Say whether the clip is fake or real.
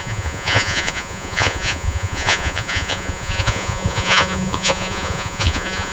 fake